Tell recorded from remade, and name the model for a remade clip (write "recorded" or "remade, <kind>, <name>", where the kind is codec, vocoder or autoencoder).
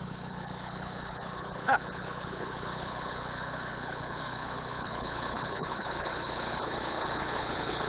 remade, codec, HILCodec